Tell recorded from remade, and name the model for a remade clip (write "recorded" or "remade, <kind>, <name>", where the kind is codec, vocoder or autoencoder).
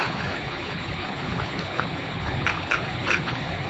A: remade, codec, HILCodec